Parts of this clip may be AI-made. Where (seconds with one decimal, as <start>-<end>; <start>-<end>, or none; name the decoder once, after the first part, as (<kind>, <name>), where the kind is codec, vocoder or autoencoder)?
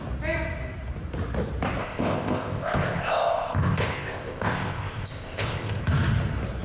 1.8-5.8 (codec, ZipCodec)